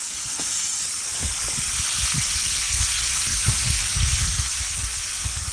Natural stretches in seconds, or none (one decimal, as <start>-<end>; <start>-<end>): 0.8-2.4